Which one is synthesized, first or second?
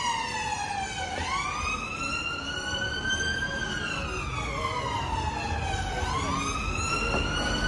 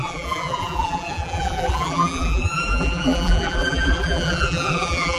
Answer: second